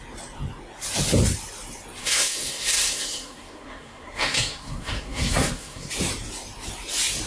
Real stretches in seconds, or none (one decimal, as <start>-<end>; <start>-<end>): 0.0-2.0; 5.9-7.3